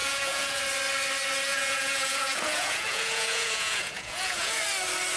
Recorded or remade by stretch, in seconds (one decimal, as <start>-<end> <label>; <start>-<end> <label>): 0.0-0.6 remade; 0.6-1.5 recorded; 1.5-4.6 remade; 4.6-5.2 recorded